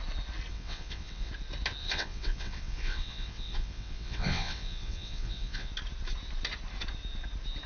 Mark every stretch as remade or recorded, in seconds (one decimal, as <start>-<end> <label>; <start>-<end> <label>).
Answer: 0.0-0.5 recorded; 0.5-1.3 remade; 1.3-1.8 recorded; 1.8-5.7 remade; 5.7-7.7 recorded